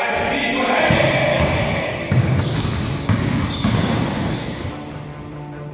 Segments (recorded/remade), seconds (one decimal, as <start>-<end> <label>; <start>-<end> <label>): 0.0-1.3 recorded; 1.3-4.7 remade; 4.7-5.7 recorded